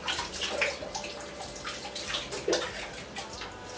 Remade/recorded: recorded